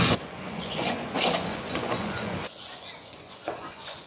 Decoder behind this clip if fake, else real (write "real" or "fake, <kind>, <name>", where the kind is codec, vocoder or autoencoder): fake, vocoder, Vocos